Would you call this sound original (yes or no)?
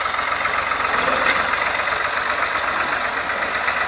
yes